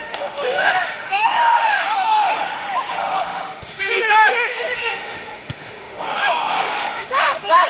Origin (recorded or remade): remade